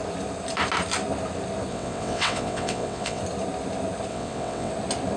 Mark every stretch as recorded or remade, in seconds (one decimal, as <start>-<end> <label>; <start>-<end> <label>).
0.0-1.7 recorded; 1.7-3.2 remade; 3.2-4.1 recorded; 4.1-4.7 remade; 4.7-5.2 recorded